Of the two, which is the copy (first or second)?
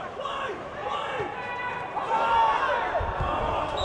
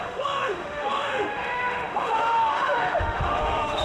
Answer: second